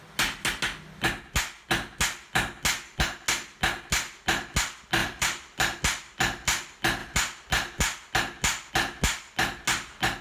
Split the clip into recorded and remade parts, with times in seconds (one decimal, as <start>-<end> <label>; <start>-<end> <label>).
0.0-5.0 recorded; 5.0-5.8 remade; 5.8-10.2 recorded